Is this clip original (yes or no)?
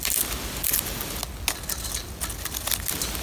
yes